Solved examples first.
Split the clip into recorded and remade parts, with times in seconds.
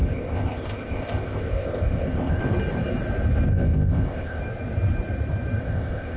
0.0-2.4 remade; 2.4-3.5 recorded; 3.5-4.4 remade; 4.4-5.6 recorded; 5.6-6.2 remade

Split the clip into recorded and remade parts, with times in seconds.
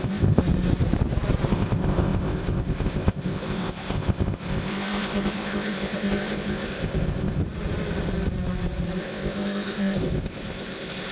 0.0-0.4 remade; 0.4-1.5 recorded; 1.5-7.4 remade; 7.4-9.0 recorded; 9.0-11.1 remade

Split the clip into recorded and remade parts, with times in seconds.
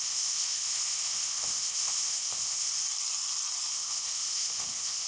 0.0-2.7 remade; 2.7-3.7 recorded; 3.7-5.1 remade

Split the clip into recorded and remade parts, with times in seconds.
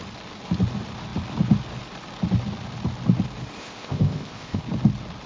0.0-3.6 recorded; 3.6-4.6 remade; 4.6-5.3 recorded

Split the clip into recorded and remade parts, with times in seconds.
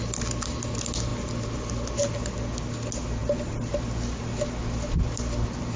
0.0-5.8 recorded